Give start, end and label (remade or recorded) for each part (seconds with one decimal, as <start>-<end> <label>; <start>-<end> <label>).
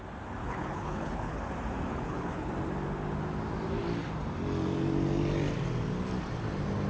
0.0-0.4 recorded; 0.4-1.4 remade; 1.4-1.9 recorded; 1.9-2.5 remade; 2.5-6.9 recorded